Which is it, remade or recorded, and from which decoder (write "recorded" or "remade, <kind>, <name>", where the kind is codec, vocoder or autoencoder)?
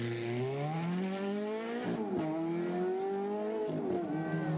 recorded